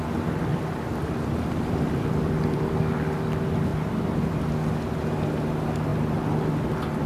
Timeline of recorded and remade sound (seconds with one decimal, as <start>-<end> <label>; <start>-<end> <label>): 0.0-0.5 recorded; 0.5-2.7 remade; 2.7-3.7 recorded; 3.7-4.5 remade; 4.5-7.1 recorded